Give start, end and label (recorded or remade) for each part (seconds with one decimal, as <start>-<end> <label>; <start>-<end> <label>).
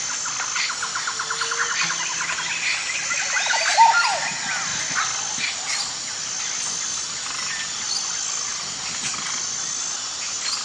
0.0-10.6 recorded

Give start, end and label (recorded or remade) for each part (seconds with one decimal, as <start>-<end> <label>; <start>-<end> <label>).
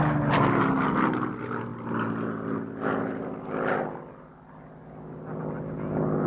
0.0-6.3 recorded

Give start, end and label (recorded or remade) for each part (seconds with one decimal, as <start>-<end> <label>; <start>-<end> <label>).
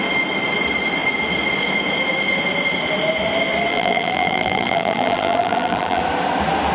0.0-3.7 recorded; 3.7-6.0 remade; 6.0-6.7 recorded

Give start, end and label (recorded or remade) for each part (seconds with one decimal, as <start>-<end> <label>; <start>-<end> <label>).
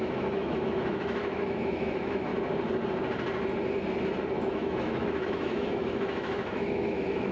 0.0-2.3 remade; 2.3-4.5 recorded; 4.5-7.3 remade